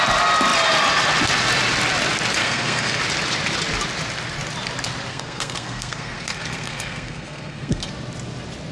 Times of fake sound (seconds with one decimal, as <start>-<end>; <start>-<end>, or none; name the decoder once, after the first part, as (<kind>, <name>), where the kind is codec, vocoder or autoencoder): 2.4-3.0 (codec, SNAC); 5.1-7.9